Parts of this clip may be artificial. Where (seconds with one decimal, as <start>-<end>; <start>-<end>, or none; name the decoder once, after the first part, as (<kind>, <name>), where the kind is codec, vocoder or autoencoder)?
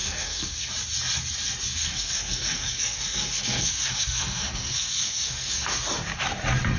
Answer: 0.0-0.7 (codec, SNAC); 1.7-5.8